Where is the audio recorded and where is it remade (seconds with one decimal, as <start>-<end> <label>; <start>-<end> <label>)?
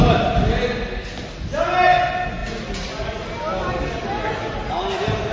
0.0-5.3 recorded